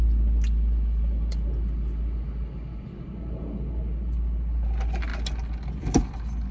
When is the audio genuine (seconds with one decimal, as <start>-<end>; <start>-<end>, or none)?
0.0-6.5